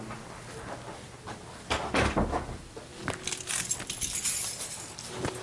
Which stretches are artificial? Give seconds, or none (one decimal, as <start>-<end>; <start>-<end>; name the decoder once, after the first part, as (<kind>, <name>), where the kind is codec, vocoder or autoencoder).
none